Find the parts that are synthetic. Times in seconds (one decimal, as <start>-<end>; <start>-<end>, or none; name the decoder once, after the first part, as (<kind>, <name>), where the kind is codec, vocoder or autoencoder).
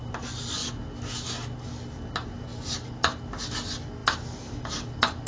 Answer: 2.5-3.4 (vocoder, BigVGAN v2); 4.0-4.7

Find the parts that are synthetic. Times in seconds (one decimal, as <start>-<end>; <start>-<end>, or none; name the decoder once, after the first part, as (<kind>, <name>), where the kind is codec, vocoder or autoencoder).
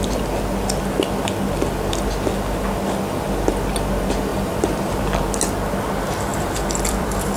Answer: 4.3-5.2 (vocoder, BigVGAN v2); 6.3-7.4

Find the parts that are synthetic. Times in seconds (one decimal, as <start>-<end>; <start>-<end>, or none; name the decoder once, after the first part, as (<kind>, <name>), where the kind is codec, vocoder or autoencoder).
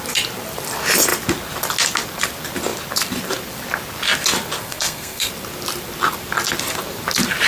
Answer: 4.6-5.3 (codec, SNAC)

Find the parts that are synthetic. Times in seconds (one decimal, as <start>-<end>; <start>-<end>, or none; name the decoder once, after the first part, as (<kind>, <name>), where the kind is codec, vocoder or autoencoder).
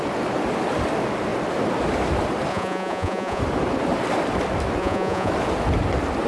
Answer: 2.5-3.4 (vocoder, Vocos); 4.8-5.3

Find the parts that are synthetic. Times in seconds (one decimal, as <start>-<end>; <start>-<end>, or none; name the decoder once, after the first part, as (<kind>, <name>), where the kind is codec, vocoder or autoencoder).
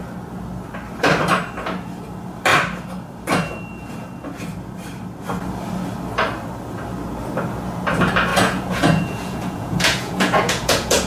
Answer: 8.3-11.1 (vocoder, Vocos)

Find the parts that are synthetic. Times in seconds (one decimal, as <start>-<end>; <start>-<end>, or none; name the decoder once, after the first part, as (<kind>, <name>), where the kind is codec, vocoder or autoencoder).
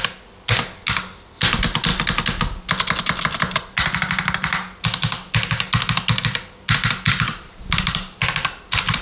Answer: none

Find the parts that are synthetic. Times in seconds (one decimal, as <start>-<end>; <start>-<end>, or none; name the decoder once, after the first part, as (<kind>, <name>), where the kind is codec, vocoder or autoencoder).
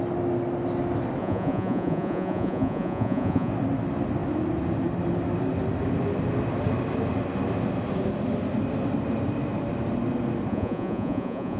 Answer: 1.2-3.5 (vocoder, Vocos); 10.5-11.6